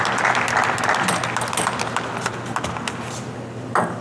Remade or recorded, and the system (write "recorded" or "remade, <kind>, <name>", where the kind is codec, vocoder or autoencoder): recorded